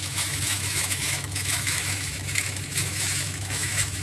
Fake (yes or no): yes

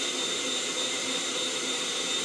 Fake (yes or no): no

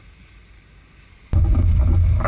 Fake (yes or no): no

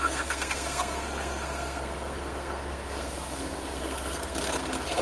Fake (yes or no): yes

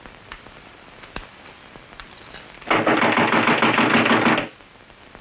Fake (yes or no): no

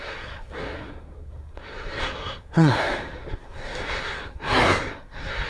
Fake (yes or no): yes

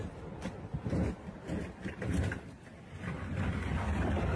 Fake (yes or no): no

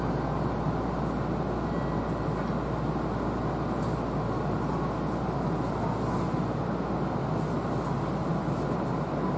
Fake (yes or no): no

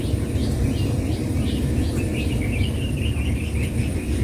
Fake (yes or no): no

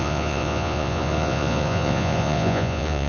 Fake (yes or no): yes